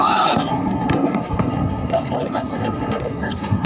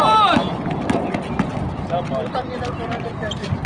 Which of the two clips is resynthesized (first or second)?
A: first